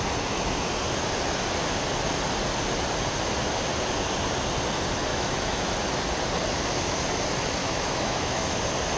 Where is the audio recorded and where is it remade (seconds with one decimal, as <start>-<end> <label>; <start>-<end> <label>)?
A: 0.0-5.1 recorded; 5.1-5.7 remade; 5.7-7.6 recorded; 7.6-8.6 remade; 8.6-9.0 recorded